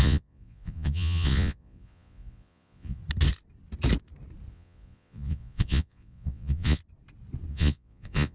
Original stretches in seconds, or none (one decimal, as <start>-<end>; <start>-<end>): 3.0-4.5; 6.8-7.5